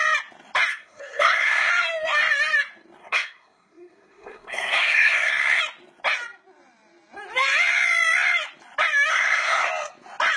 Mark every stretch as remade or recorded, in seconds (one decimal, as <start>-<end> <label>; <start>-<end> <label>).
0.0-0.7 recorded; 0.7-1.7 remade; 1.7-3.0 recorded; 3.0-5.6 remade; 5.6-9.1 recorded; 9.1-9.7 remade; 9.7-10.4 recorded